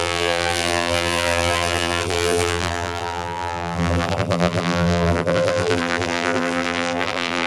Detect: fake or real fake